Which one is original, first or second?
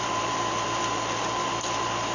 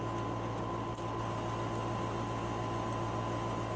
second